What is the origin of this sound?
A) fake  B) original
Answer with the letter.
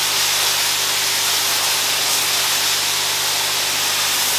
B